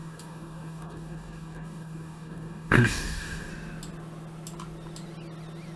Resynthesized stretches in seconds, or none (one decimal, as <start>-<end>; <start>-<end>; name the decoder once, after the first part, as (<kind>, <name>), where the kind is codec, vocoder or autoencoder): 0.0-3.5 (codec, DAC)